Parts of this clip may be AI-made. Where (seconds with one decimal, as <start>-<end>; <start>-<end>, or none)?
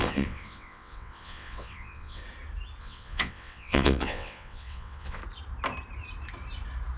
0.0-2.2; 2.8-5.2